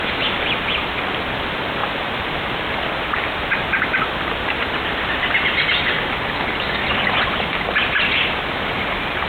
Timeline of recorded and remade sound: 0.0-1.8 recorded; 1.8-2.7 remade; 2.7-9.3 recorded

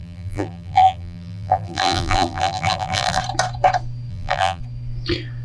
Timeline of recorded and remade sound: 0.0-3.2 remade; 3.2-4.1 recorded; 4.1-4.6 remade; 4.6-5.4 recorded

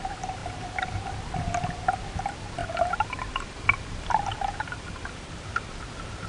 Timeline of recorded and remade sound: 0.0-2.6 recorded; 2.6-5.7 remade; 5.7-6.3 recorded

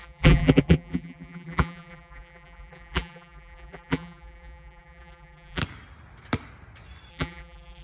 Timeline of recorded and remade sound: 0.0-5.6 remade; 5.6-7.1 recorded; 7.1-7.8 remade

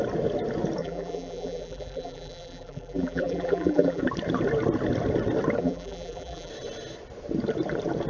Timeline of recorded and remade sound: 0.0-0.8 recorded; 0.8-4.0 remade; 4.0-5.6 recorded; 5.6-6.5 remade; 6.5-8.1 recorded